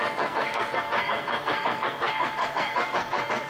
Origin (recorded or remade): remade